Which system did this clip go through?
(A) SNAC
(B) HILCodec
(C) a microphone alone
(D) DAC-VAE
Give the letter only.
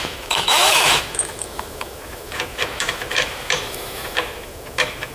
D